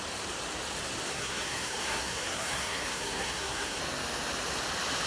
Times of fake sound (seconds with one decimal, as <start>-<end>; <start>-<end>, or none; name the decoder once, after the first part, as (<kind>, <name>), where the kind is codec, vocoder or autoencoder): 1.1-3.8 (codec, SNAC)